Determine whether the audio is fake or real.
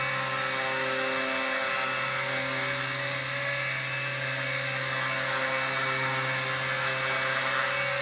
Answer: real